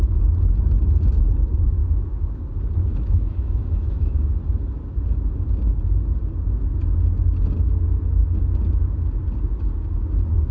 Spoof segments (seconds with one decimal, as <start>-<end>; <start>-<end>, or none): 1.8-2.4; 2.9-4.3